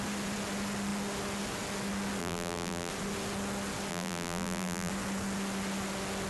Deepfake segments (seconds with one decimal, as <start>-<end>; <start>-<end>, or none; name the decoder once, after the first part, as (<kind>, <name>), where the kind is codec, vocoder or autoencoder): 2.2-2.9 (vocoder, BigVGAN v2); 3.9-4.9

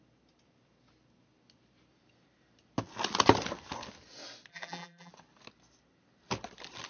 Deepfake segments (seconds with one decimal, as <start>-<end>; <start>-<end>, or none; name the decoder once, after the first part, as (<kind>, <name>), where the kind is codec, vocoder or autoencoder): 4.5-5.1 (vocoder, BigVGAN v2)

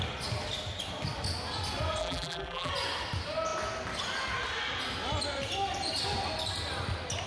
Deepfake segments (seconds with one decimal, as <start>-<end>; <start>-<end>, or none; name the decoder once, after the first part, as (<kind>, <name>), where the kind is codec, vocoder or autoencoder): 2.0-2.7 (vocoder, BigVGAN v2)

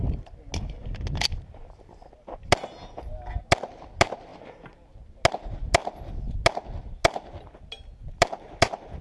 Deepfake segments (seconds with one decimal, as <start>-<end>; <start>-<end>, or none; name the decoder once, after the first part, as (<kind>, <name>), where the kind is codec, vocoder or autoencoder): 7.9-8.6 (vocoder, BigVGAN v2)

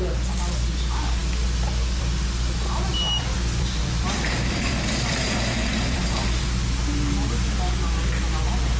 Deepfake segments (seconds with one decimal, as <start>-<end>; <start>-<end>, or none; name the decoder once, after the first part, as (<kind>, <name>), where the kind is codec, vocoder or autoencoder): 2.9-6.0 (vocoder, BigVGAN v2)

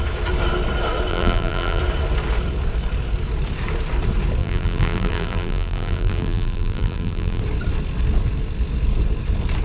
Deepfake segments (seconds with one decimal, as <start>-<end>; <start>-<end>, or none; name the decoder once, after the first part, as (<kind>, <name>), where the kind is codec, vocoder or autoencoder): 1.1-1.8 (vocoder, BigVGAN v2); 4.4-7.4

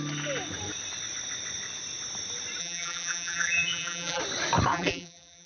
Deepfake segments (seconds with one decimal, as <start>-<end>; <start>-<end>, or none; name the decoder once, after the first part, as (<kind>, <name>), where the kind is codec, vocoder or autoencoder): 2.6-4.2 (vocoder, BigVGAN v2); 4.7-5.5